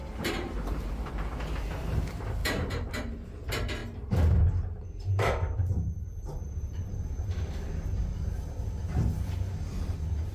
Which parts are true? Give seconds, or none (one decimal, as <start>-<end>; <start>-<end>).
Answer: 1.1-2.4; 2.9-3.8; 7.5-10.3